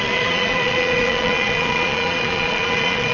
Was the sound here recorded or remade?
remade